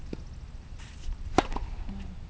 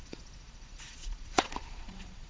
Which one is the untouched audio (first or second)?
first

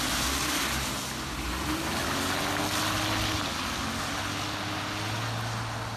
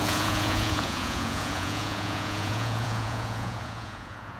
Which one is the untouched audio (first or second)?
first